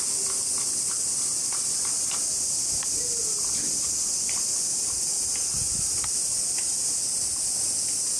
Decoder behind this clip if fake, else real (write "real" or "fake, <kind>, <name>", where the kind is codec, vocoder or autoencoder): real